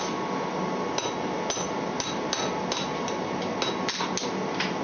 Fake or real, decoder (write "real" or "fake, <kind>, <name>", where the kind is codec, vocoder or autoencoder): real